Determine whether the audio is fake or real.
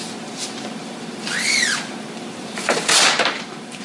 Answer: fake